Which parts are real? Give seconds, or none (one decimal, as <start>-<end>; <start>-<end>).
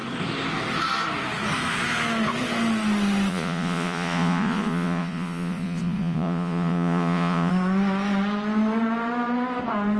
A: 0.0-3.3; 7.5-10.0